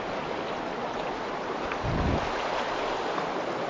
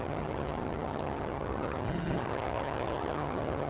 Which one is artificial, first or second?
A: second